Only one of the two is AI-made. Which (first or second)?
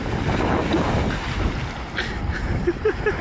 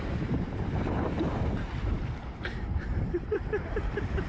second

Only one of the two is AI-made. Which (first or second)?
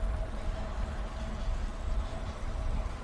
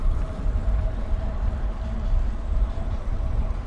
second